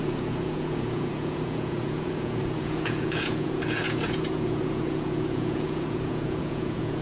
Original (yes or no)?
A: no